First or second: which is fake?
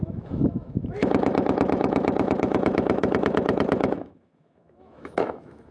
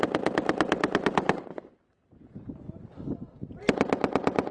first